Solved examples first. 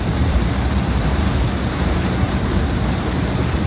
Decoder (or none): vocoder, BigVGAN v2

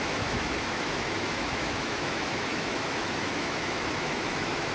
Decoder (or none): autoencoder, DAC-VAE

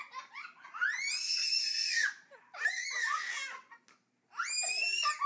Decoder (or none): none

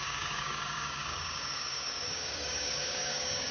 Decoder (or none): codec, DAC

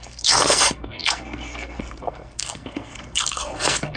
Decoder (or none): codec, SNAC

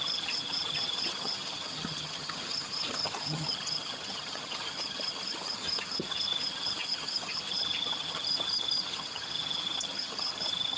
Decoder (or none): vocoder, HiFi-GAN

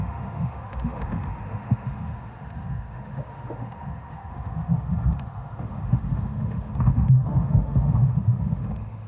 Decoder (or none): autoencoder, DAC-VAE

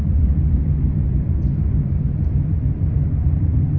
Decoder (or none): none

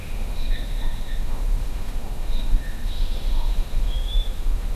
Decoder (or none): autoencoder, DAC-VAE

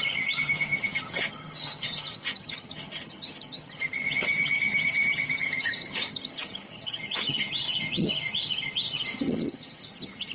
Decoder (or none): vocoder, HiFi-GAN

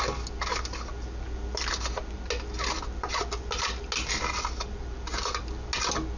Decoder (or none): none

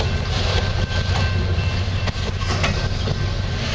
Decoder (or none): none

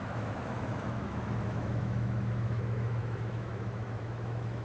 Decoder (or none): autoencoder, DAC-VAE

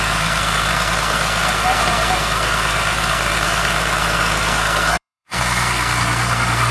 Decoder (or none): codec, SNAC